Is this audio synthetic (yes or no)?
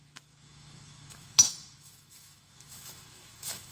yes